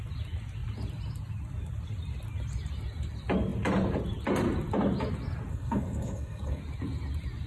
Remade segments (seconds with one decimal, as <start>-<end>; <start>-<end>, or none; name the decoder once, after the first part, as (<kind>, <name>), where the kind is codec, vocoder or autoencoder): 5.5-6.6 (codec, SNAC)